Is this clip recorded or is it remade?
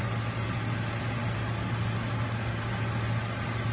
recorded